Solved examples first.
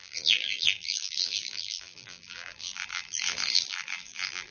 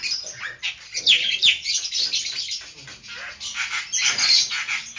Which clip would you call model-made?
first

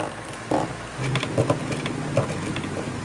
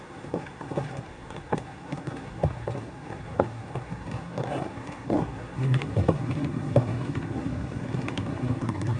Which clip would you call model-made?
second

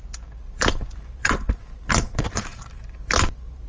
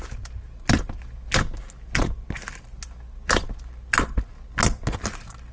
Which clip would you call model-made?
first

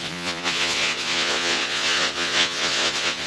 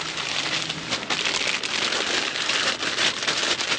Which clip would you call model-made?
first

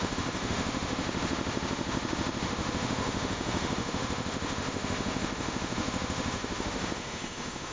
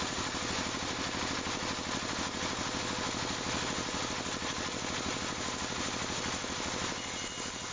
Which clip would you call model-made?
first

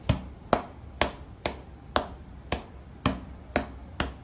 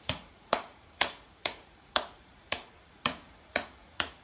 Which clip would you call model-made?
second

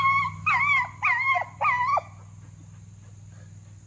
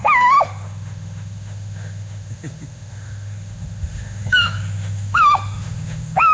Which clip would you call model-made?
second